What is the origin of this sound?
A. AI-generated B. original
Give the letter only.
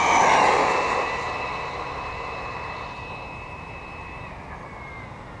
B